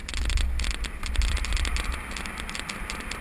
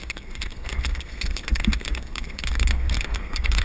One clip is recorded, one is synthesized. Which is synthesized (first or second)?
second